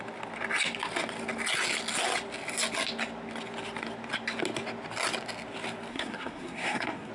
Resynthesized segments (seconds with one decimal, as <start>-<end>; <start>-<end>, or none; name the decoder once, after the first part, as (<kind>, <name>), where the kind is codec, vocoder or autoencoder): 5.9-7.1 (codec, SNAC)

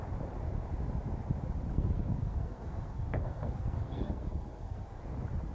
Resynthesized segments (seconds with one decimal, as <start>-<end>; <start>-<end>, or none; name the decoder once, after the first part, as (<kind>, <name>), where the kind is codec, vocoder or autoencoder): 1.7-5.0 (codec, SNAC)

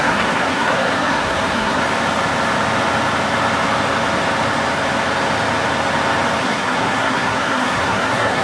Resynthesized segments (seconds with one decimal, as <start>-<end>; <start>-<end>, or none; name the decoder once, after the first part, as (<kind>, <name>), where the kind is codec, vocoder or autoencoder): 0.0-1.8 (codec, SNAC); 6.4-8.4

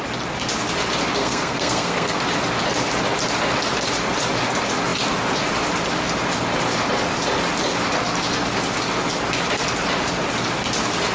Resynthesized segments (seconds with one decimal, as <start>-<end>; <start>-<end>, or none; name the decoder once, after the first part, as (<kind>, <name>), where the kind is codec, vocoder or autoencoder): 1.2-2.2 (codec, SNAC)

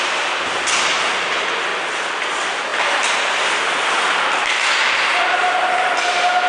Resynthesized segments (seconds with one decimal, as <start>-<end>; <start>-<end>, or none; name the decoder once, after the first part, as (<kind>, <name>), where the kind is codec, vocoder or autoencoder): none